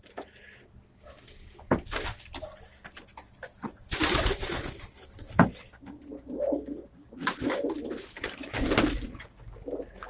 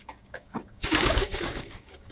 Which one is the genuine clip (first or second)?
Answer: first